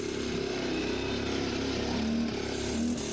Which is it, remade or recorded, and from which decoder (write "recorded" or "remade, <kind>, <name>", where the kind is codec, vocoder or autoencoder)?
recorded